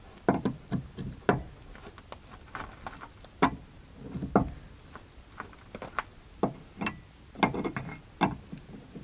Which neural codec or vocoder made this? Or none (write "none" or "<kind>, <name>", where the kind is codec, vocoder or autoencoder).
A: none